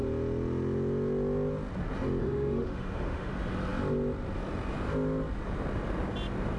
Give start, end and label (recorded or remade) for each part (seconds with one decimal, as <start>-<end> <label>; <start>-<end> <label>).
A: 0.0-2.2 recorded; 2.2-3.3 remade; 3.3-6.6 recorded